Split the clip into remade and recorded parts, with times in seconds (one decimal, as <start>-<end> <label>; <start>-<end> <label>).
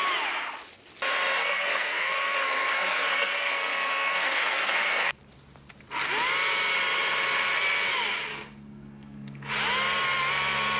0.0-1.4 recorded; 1.4-5.2 remade; 5.2-8.3 recorded; 8.3-9.5 remade; 9.5-10.8 recorded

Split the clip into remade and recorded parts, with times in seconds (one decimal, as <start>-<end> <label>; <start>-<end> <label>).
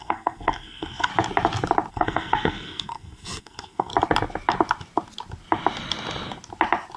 0.0-1.1 remade; 1.1-1.9 recorded; 1.9-3.9 remade; 3.9-7.0 recorded